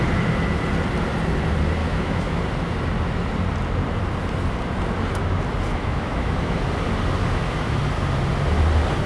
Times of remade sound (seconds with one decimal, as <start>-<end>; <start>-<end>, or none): 1.8-2.4; 5.7-6.6; 7.2-7.8